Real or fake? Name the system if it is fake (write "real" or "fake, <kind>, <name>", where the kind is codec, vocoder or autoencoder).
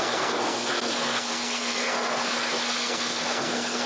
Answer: fake, codec, SNAC